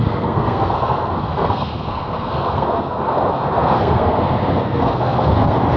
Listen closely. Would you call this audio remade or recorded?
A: remade